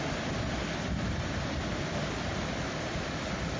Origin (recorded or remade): recorded